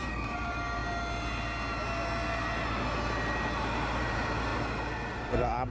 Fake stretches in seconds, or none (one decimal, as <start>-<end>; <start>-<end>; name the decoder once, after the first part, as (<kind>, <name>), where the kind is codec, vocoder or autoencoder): 0.0-0.8 (vocoder, BigVGAN v2); 4.0-4.5; 5.1-5.7